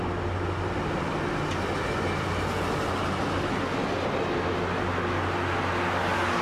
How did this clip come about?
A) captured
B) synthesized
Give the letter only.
A